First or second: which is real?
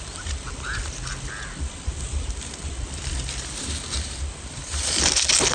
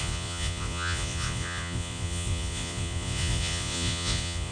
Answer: first